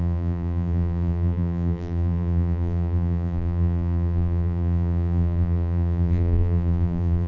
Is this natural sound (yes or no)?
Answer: no